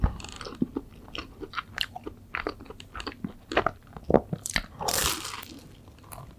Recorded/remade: remade